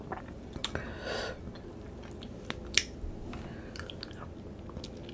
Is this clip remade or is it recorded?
recorded